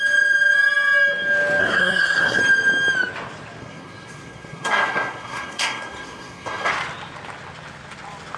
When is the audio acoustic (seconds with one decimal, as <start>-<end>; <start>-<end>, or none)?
0.0-1.6; 2.4-3.6; 6.7-8.4